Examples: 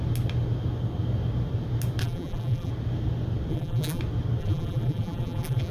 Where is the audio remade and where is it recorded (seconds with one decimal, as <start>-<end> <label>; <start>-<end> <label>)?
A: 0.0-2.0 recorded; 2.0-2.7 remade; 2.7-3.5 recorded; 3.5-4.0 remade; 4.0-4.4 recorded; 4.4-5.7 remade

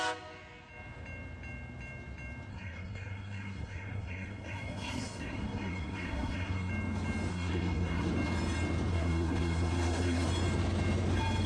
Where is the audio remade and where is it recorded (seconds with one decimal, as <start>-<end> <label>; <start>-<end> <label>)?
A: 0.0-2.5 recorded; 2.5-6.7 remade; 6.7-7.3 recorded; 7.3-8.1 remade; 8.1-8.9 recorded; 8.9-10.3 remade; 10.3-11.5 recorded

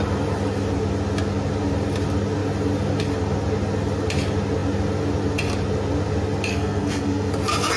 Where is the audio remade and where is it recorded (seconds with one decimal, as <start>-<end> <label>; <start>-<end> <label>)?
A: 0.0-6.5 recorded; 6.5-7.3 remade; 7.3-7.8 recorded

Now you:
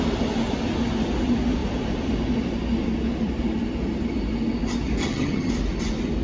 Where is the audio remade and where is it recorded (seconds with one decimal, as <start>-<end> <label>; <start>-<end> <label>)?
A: 0.0-5.0 recorded; 5.0-5.5 remade; 5.5-6.2 recorded

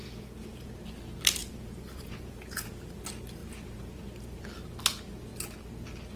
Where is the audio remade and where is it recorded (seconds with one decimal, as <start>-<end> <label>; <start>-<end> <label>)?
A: 0.0-0.7 remade; 0.7-1.4 recorded; 1.4-2.8 remade; 2.8-3.4 recorded; 3.4-4.0 remade; 4.0-6.2 recorded

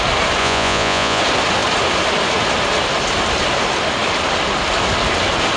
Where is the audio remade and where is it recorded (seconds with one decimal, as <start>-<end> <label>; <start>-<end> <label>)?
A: 0.0-0.4 recorded; 0.4-1.2 remade; 1.2-5.6 recorded

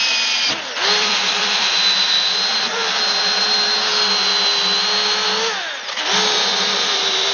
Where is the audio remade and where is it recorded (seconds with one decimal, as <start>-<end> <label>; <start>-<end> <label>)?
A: 0.0-1.0 recorded; 1.0-3.9 remade; 3.9-6.6 recorded; 6.6-7.3 remade

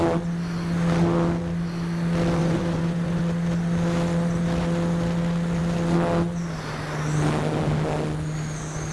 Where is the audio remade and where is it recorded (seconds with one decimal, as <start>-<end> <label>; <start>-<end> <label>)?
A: 0.0-2.4 recorded; 2.4-3.2 remade; 3.2-8.9 recorded